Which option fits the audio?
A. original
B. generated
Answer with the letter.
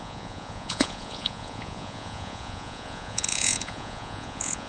B